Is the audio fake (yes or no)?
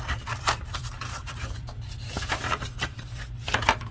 yes